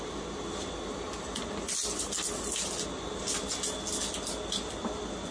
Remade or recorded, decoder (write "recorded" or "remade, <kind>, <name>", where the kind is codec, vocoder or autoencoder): recorded